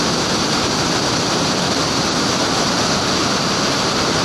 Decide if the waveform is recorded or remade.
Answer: recorded